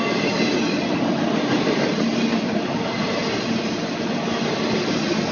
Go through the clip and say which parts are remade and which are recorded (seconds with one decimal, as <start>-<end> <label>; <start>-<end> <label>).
0.0-5.3 recorded